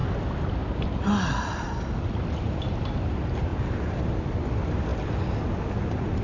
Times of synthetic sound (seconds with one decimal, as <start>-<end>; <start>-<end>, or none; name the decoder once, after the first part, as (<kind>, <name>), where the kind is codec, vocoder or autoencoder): 3.5-4.1 (vocoder, BigVGAN v2)

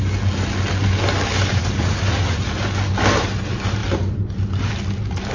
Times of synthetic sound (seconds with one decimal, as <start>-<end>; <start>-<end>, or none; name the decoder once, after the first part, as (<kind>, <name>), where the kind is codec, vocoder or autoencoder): 1.5-2.6 (vocoder, Vocos)

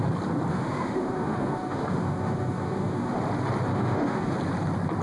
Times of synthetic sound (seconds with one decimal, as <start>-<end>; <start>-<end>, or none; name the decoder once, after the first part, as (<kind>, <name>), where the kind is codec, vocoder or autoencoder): 0.5-3.2 (autoencoder, DAC-VAE); 3.7-4.3

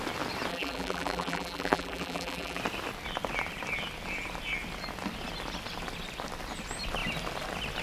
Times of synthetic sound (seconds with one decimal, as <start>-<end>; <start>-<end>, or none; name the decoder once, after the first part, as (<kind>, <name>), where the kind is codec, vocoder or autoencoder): 0.5-2.6 (vocoder, BigVGAN v2)